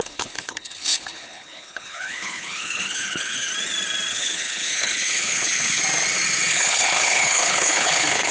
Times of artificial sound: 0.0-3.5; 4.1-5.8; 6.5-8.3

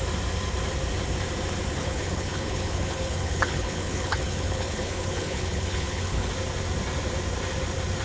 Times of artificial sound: 1.8-6.3

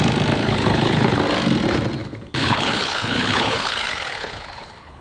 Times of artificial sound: 0.4-1.2; 2.0-5.0